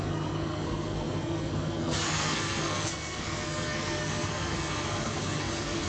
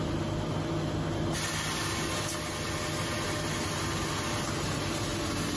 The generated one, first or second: first